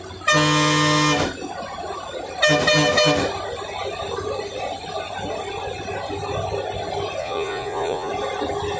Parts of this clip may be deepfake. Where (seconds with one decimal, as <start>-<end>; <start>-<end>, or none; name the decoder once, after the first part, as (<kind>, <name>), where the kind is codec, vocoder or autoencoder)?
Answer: 7.2-8.1 (vocoder, Vocos)